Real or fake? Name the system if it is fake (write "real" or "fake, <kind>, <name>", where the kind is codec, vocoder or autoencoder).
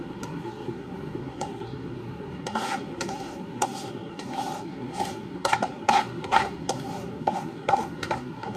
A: fake, codec, SNAC